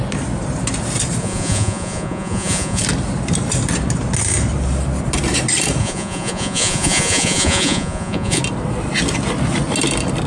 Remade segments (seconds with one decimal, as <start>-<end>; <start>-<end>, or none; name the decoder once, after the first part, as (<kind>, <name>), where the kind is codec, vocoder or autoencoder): 1.2-2.8 (vocoder, Vocos); 5.8-8.4

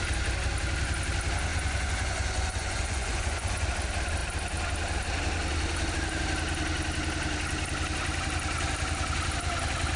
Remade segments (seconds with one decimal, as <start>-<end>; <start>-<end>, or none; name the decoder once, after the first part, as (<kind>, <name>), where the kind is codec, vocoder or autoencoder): 1.5-3.7 (vocoder, Vocos)

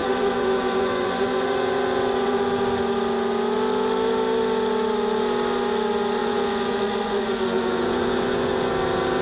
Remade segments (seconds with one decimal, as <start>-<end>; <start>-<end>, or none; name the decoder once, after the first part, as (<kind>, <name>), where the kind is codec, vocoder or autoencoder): 0.0-2.4 (vocoder, Vocos); 6.2-8.7